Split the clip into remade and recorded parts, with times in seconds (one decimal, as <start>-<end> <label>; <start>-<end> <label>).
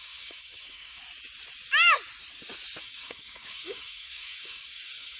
0.0-1.0 remade; 1.0-2.8 recorded; 2.8-5.2 remade